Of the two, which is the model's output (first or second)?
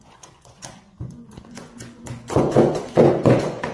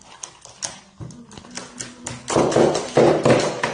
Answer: first